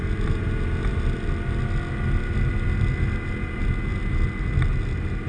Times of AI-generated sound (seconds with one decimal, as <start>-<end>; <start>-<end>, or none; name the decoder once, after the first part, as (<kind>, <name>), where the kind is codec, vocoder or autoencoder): none